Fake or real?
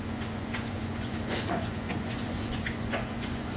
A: fake